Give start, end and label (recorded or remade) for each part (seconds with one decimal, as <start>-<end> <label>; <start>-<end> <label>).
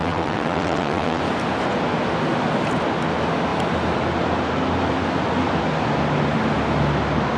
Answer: 0.0-1.2 remade; 1.2-7.4 recorded